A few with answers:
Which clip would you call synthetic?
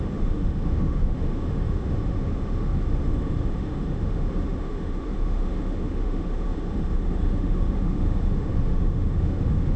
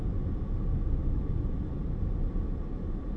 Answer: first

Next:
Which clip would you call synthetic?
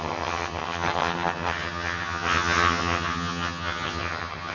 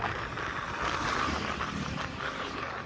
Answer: first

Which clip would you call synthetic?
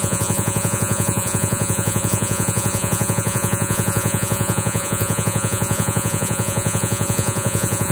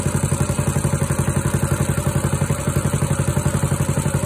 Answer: first